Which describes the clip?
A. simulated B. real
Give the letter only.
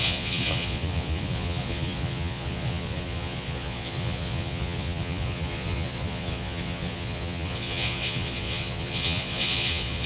A